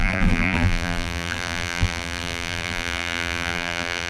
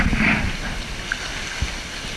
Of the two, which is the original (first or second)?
second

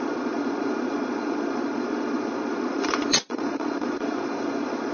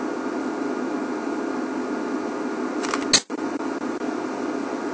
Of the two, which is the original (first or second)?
second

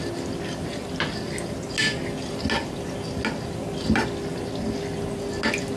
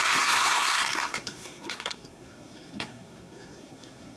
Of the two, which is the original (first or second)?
first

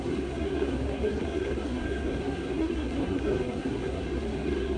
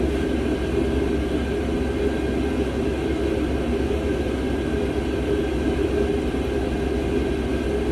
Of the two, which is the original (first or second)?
second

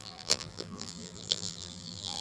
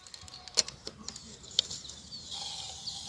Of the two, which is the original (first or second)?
second